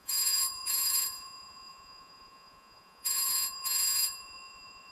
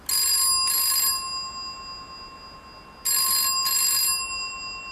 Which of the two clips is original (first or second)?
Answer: second